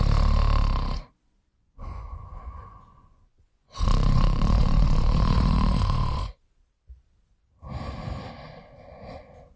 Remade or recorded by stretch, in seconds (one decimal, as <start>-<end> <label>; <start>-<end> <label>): 0.0-1.5 recorded; 1.5-6.4 remade; 6.4-9.6 recorded